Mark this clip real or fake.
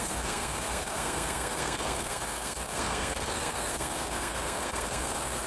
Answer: fake